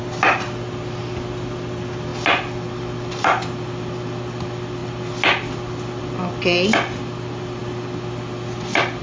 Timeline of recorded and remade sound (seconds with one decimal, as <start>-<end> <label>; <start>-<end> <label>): 0.0-9.0 recorded